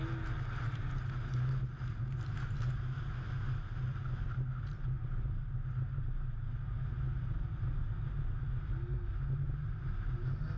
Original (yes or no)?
yes